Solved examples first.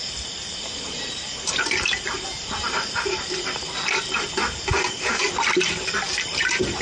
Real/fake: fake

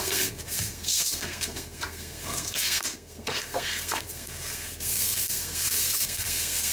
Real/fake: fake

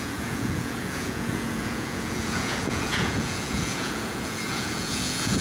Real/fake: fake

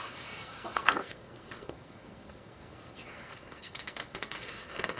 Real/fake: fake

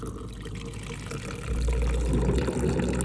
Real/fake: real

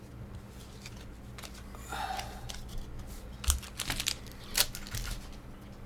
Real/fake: real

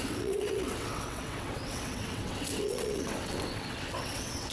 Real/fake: fake